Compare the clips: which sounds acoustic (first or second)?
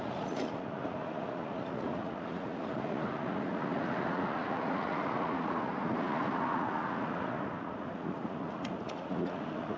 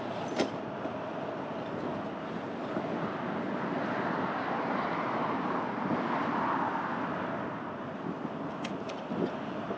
second